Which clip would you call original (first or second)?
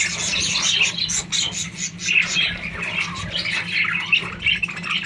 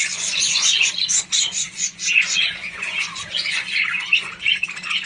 first